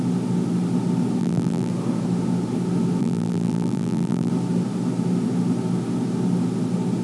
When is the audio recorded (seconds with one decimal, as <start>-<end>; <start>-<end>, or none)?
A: 0.0-1.2; 1.7-3.0; 4.3-7.0